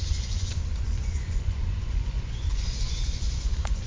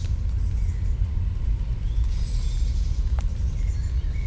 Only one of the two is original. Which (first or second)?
second